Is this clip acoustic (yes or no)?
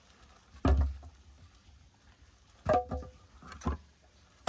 yes